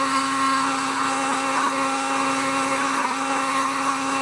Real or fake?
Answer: fake